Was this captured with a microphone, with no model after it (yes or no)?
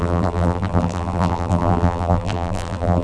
no